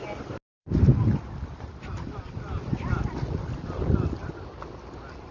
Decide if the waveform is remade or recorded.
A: recorded